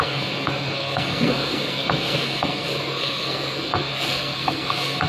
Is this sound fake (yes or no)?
yes